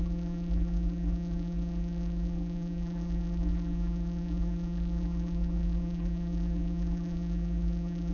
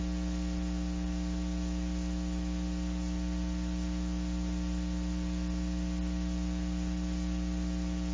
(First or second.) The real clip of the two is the second